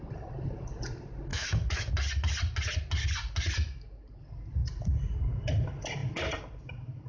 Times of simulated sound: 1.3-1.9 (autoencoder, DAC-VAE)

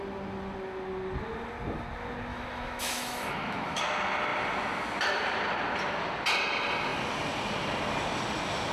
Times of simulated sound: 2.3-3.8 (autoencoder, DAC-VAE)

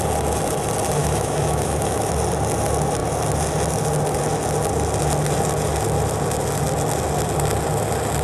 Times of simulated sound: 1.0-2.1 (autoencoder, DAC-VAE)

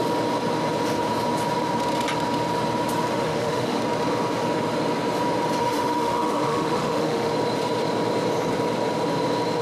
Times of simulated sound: 3.1-3.8 (autoencoder, DAC-VAE); 5.6-7.3

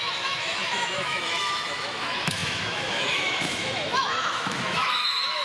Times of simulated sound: 0.0-5.4 (autoencoder, DAC-VAE)

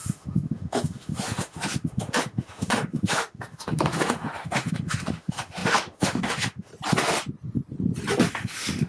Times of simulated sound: 0.0-6.7 (autoencoder, DAC-VAE); 8.3-8.9